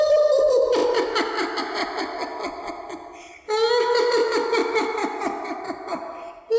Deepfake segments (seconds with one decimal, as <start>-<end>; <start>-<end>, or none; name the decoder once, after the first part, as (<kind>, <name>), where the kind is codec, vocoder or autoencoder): 0.0-0.8 (vocoder, BigVGAN v2); 1.6-2.3; 5.6-6.6